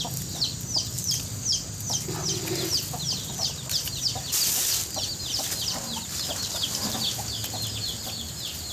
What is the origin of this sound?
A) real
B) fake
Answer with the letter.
A